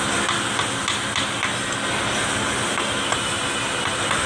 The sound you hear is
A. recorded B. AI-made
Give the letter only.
A